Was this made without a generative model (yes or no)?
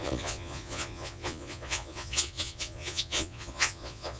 no